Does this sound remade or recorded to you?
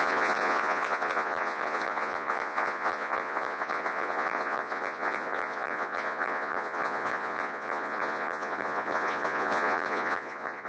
remade